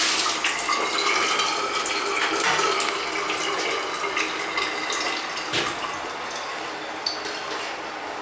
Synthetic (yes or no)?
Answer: no